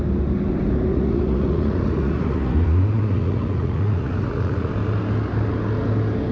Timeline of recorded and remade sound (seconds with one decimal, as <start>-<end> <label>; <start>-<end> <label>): 0.0-0.9 recorded; 0.9-4.7 remade; 4.7-6.3 recorded